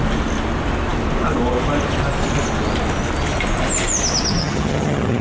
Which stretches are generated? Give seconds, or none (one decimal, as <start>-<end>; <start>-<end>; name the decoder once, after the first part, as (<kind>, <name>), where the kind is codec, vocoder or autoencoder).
4.4-5.2 (vocoder, HiFi-GAN)